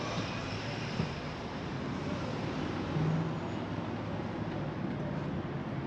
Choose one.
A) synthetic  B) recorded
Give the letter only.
B